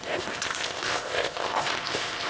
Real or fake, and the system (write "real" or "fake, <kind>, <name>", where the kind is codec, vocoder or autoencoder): fake, codec, ZipCodec